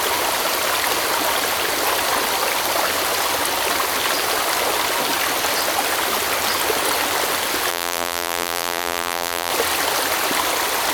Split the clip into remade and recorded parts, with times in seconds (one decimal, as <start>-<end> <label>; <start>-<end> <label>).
0.0-7.7 recorded; 7.7-9.5 remade; 9.5-10.9 recorded